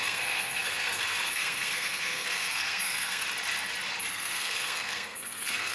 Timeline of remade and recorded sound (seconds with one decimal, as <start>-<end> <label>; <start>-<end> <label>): 0.0-3.2 remade; 3.2-4.1 recorded; 4.1-5.7 remade